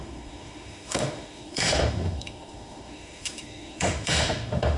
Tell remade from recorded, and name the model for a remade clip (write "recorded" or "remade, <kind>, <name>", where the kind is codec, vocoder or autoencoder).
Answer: remade, autoencoder, DAC-VAE